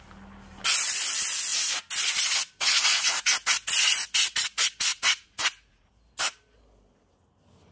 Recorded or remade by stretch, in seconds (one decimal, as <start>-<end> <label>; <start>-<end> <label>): 0.0-4.9 recorded; 4.9-5.9 remade; 5.9-7.7 recorded